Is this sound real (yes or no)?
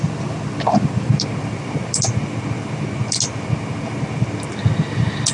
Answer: yes